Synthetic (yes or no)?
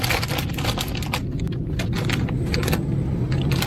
no